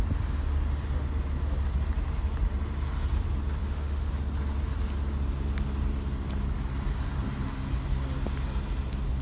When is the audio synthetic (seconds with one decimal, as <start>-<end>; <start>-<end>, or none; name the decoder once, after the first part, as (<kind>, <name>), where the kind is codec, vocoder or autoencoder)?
3.6-4.1 (autoencoder, DAC-VAE)